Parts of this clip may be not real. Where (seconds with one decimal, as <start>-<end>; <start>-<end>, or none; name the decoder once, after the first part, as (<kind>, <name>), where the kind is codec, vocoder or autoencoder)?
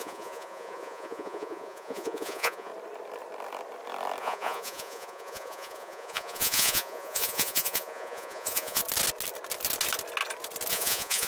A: 0.0-2.7 (vocoder, Vocos); 4.2-8.8; 10.7-11.3